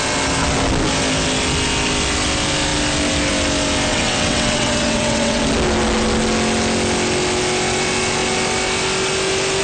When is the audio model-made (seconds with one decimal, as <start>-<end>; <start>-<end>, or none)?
3.9-5.4